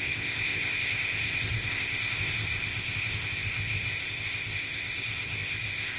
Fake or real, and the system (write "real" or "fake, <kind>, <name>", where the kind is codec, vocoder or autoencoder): fake, codec, ZipCodec